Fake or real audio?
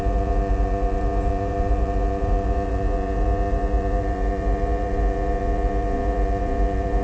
fake